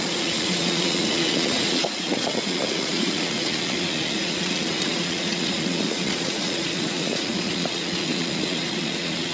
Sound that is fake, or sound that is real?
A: fake